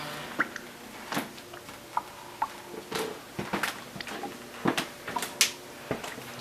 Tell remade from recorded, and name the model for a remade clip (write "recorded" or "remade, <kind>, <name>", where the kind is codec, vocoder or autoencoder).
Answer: recorded